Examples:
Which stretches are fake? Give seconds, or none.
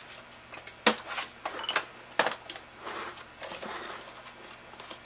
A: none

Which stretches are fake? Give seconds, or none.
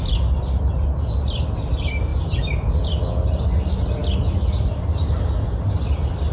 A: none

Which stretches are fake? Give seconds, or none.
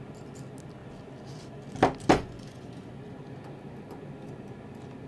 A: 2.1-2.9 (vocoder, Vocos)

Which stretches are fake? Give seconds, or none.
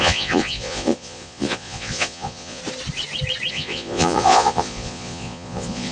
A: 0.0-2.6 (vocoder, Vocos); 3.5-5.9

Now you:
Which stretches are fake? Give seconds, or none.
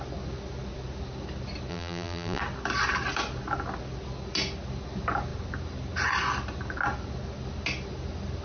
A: 1.7-2.4 (vocoder, BigVGAN v2)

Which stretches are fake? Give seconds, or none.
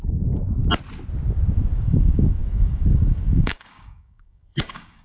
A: 0.0-0.6 (codec, DAC); 1.7-5.0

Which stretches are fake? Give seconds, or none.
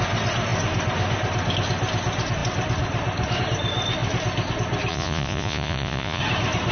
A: 4.9-6.2 (vocoder, Vocos)